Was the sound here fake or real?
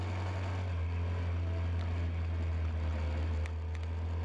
real